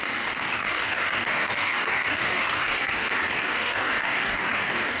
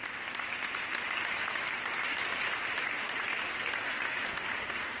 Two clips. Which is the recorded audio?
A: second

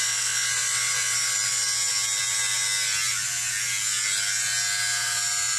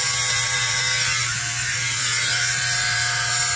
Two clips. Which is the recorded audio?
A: first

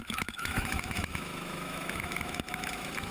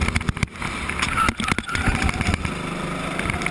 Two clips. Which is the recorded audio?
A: second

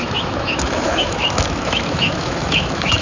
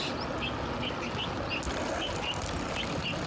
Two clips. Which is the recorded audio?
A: second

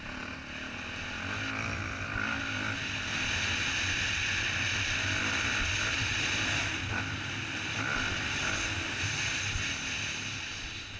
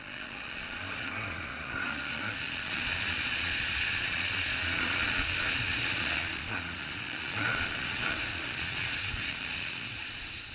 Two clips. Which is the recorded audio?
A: first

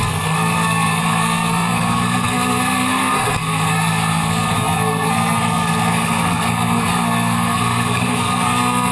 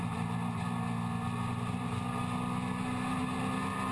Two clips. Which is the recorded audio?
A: second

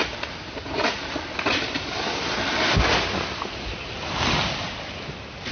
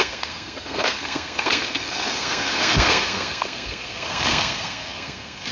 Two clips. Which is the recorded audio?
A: first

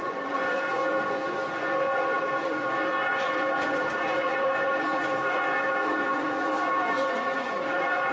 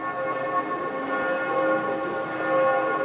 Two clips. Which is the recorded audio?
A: second